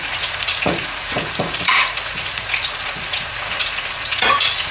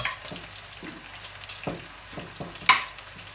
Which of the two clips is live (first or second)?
second